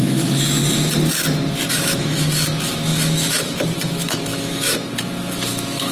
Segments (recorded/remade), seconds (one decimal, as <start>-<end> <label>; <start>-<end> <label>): 0.0-0.6 remade; 0.6-1.7 recorded; 1.7-5.9 remade